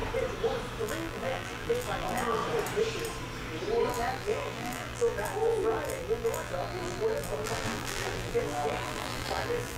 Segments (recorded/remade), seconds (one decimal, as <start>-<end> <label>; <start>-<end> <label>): 0.0-0.8 recorded; 0.8-2.4 remade; 2.4-3.9 recorded; 3.9-9.8 remade